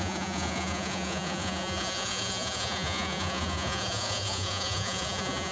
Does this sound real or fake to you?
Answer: fake